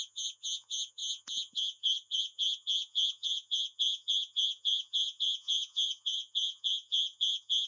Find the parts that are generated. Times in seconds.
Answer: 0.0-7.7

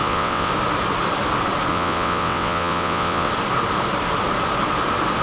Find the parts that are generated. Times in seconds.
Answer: 0.0-0.5; 1.7-3.3

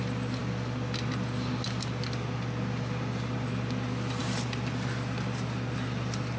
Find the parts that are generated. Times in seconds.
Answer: none

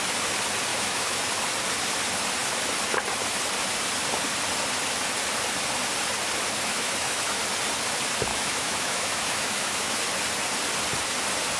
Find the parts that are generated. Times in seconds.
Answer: 0.7-1.2; 6.7-7.4; 8.3-10.0

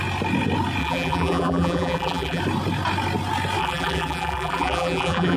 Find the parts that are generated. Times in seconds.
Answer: 0.8-2.4; 3.6-5.4